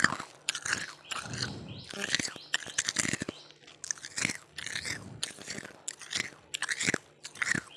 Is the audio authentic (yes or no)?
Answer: yes